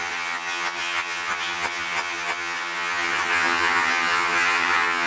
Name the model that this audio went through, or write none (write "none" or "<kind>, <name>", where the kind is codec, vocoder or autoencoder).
vocoder, HiFi-GAN